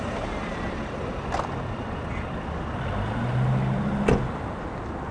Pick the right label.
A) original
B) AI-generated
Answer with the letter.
A